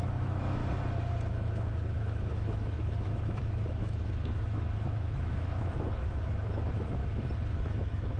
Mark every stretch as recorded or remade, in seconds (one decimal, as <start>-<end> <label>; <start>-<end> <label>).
0.0-0.6 remade; 0.6-1.3 recorded; 1.3-7.0 remade; 7.0-7.6 recorded; 7.6-8.2 remade